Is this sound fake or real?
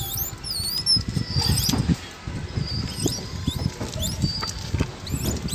real